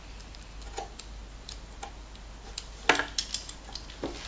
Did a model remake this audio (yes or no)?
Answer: no